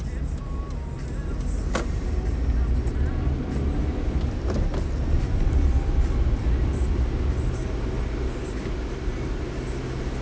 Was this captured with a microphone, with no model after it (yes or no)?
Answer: yes